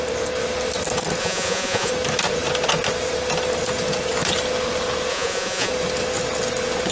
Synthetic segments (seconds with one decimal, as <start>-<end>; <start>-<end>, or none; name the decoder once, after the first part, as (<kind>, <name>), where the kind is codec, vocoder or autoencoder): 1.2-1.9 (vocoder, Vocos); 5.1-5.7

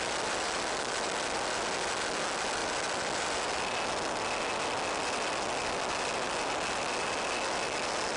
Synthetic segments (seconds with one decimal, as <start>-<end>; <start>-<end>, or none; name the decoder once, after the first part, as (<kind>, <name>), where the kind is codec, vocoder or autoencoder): none

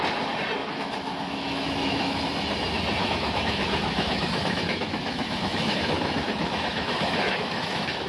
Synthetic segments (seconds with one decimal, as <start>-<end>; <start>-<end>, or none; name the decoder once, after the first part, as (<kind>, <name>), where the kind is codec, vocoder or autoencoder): 0.6-2.2 (autoencoder, DAC-VAE); 3.0-8.1